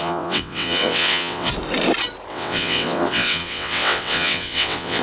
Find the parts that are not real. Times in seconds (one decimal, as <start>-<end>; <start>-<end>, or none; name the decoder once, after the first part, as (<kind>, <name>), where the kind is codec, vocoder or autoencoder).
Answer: 0.0-1.5 (vocoder, WaveNeXt); 2.3-5.0